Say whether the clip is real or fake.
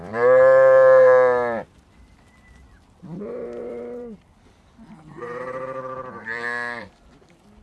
fake